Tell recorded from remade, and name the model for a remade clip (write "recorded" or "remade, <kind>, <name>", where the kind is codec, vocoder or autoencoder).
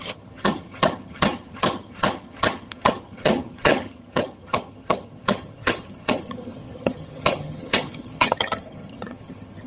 remade, vocoder, HiFi-GAN